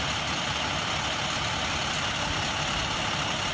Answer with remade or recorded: recorded